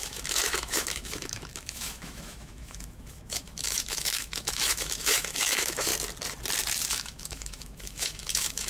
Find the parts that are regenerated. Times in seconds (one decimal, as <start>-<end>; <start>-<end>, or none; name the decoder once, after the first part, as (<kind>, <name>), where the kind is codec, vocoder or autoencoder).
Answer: 0.0-5.9 (autoencoder, DAC-VAE); 6.9-8.7